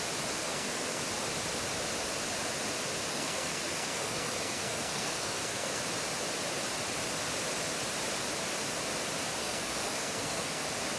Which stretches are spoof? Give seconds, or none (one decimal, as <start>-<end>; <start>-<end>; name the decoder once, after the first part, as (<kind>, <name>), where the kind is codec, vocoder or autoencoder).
0.4-1.0 (codec, SNAC); 3.1-5.8; 9.4-10.6